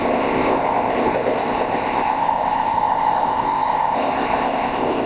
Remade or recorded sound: remade